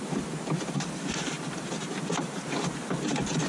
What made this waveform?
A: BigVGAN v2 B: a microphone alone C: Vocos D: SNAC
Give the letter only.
B